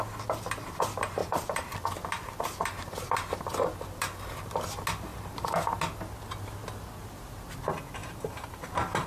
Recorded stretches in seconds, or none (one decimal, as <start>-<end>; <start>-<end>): 0.0-5.1; 5.8-8.0; 8.7-9.1